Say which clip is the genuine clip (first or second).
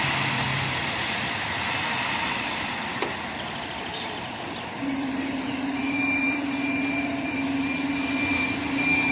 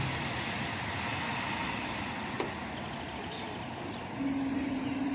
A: second